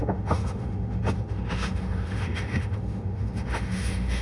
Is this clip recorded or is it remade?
remade